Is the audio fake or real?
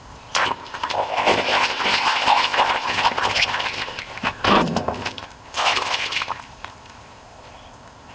fake